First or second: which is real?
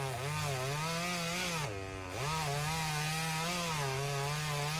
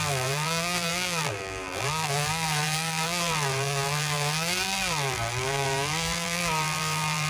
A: first